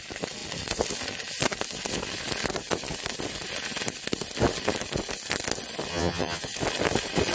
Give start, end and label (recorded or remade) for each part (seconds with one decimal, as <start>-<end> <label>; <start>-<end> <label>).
0.0-5.9 recorded; 5.9-6.4 remade; 6.4-7.3 recorded